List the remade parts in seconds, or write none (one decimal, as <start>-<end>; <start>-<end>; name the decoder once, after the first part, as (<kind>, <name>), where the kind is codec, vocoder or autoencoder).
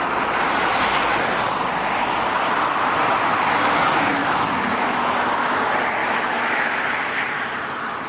4.2-5.6 (autoencoder, DAC-VAE); 6.0-6.6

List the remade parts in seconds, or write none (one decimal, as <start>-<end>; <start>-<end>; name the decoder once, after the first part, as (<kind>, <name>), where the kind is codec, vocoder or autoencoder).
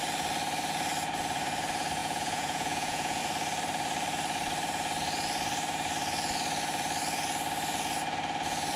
2.0-3.2 (vocoder, Vocos)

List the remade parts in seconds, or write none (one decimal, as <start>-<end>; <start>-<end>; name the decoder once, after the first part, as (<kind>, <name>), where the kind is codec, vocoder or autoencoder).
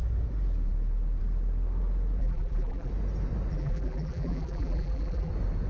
2.2-2.9 (vocoder, BigVGAN v2); 3.5-5.3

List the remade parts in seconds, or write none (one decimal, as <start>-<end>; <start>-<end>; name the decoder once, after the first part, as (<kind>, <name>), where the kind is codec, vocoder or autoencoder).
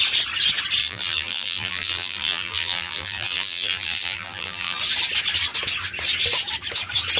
0.8-4.8 (vocoder, BigVGAN v2)